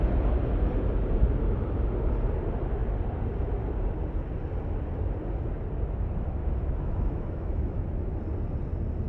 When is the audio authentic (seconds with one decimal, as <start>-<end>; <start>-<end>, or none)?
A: 0.0-6.4; 8.2-9.1